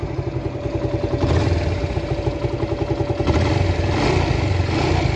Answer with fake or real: real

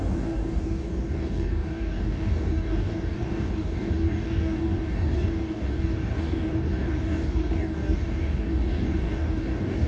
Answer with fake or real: fake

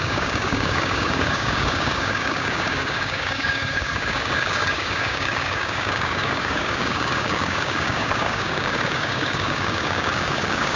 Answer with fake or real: fake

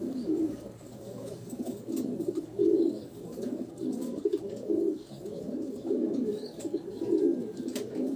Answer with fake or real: fake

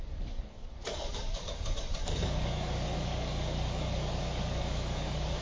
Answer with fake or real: fake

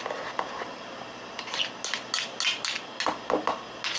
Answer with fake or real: real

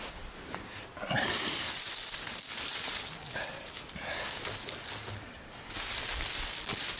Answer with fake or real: real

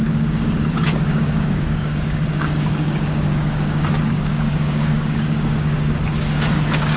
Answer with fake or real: fake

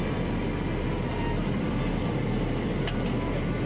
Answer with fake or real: real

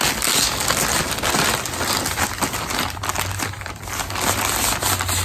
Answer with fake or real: real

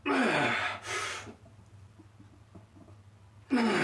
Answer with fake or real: real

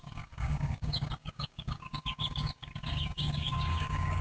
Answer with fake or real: fake